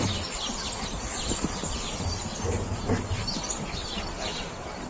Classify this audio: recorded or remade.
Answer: recorded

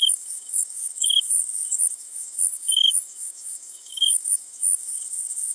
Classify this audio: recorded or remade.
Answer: remade